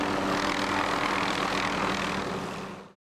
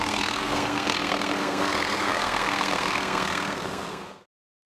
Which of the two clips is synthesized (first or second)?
second